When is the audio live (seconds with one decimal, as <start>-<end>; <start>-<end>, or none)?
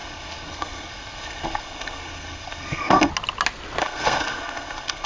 3.1-3.8